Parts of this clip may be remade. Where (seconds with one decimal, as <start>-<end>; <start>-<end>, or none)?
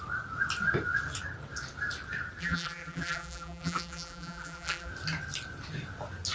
2.4-4.9